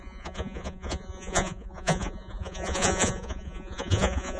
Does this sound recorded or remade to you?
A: remade